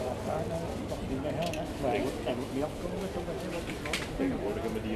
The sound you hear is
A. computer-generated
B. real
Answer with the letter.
B